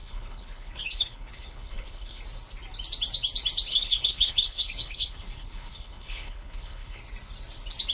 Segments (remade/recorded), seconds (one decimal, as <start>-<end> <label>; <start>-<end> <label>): 0.0-2.2 remade; 2.2-3.7 recorded; 3.7-7.0 remade; 7.0-7.9 recorded